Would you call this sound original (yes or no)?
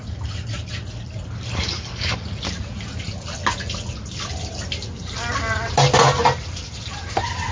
yes